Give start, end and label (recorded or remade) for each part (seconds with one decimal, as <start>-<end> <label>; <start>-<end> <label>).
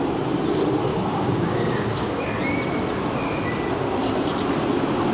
0.0-0.9 recorded; 0.9-2.2 remade; 2.2-5.1 recorded